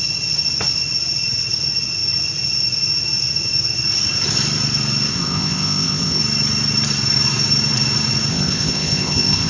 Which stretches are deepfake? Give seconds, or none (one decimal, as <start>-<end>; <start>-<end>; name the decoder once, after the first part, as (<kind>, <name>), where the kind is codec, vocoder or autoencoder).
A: 5.1-6.2 (codec, ZipCodec); 8.3-9.5